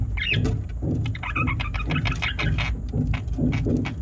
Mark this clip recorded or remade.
recorded